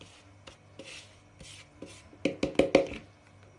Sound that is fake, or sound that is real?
real